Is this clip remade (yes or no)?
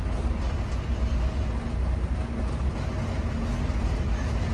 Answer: no